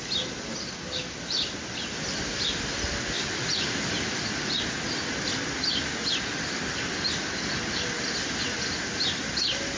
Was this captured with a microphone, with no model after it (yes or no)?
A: yes